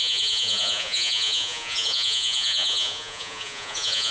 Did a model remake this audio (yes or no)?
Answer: yes